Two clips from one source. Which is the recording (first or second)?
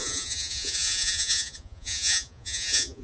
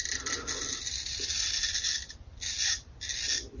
second